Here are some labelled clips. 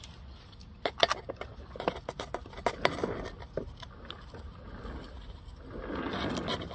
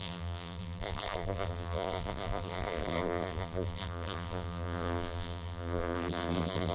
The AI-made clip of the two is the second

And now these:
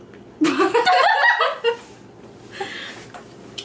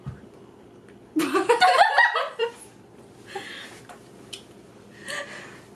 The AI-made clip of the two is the second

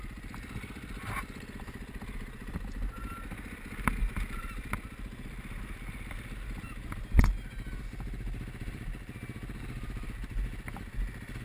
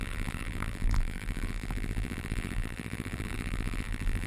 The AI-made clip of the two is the second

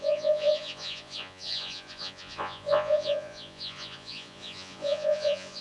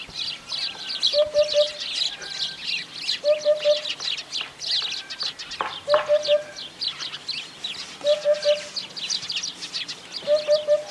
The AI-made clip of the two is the first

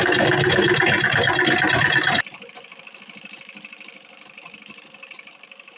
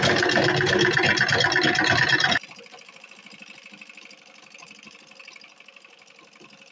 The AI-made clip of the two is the first